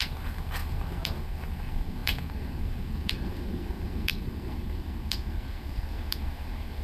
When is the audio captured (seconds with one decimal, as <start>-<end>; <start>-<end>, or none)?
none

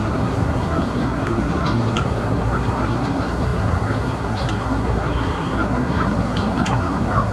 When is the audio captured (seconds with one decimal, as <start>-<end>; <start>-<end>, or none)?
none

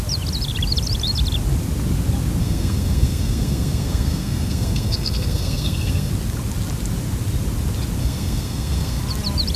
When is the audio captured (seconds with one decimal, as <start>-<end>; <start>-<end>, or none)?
0.0-2.4; 6.1-8.0; 9.0-9.6